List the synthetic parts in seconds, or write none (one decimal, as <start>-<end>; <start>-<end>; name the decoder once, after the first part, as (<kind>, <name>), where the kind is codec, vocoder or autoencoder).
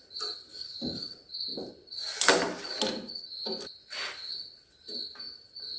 0.5-1.0 (codec, DAC)